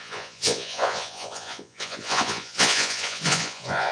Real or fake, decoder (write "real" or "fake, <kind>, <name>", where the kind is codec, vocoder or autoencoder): fake, vocoder, Vocos